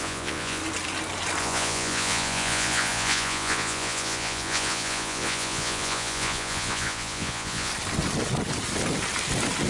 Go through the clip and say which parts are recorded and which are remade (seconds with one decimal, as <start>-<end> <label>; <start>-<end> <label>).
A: 0.0-0.6 remade; 0.6-1.4 recorded; 1.4-7.7 remade; 7.7-9.7 recorded